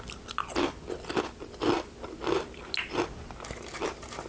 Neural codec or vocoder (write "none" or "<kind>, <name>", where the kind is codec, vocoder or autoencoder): none